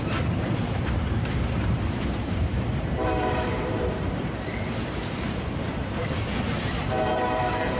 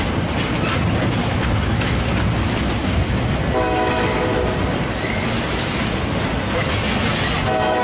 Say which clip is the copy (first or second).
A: first